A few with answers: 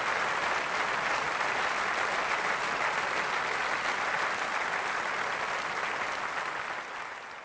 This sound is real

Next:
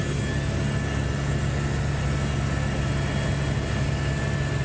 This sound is real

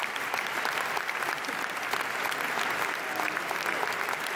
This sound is fake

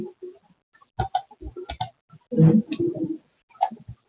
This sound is real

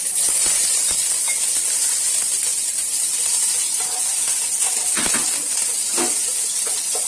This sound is real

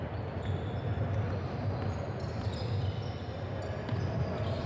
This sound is real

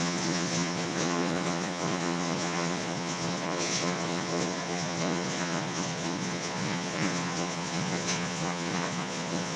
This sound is fake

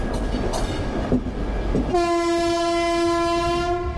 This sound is real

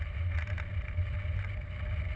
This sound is real